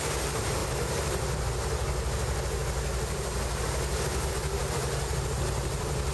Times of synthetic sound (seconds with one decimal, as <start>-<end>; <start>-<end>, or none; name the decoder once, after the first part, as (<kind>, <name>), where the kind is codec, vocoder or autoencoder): 0.0-0.6 (vocoder, BigVGAN v2); 4.3-6.1